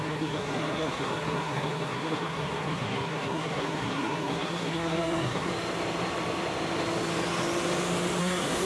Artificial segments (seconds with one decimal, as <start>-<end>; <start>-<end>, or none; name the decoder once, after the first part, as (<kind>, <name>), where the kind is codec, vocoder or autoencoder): 0.0-5.5 (codec, SNAC); 8.2-8.7

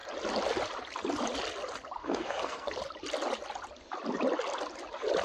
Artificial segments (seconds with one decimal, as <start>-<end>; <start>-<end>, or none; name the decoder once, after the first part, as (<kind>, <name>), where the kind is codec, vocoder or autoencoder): 2.0-2.7 (codec, SNAC)

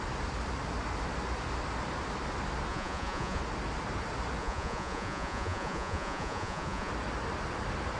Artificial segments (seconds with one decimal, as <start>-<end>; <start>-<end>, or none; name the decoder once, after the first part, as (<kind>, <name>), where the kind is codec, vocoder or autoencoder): 2.7-3.4 (vocoder, Vocos); 4.4-6.9

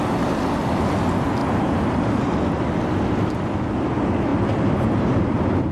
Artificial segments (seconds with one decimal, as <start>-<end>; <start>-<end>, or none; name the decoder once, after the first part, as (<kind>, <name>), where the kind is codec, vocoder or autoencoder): 1.4-2.0 (vocoder, BigVGAN v2); 4.3-5.2

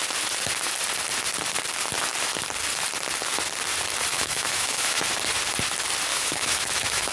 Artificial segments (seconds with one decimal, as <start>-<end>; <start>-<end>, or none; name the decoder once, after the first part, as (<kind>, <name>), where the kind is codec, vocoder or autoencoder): 4.1-5.0 (autoencoder, DAC-VAE); 6.1-7.1

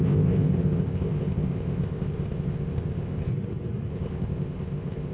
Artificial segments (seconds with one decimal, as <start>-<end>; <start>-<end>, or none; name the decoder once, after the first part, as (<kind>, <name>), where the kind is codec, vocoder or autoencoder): 0.0-3.3 (codec, ZipCodec); 3.9-5.1

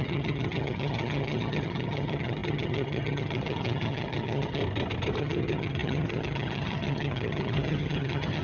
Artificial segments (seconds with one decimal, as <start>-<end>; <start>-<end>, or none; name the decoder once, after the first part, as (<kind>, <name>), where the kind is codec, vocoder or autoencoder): 0.0-4.6 (vocoder, HiFi-GAN); 5.2-8.4